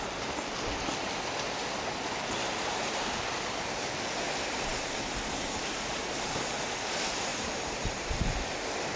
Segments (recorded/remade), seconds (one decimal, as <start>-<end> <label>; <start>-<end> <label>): 0.0-2.5 recorded; 2.5-3.8 remade; 3.8-7.3 recorded; 7.3-8.5 remade; 8.5-9.0 recorded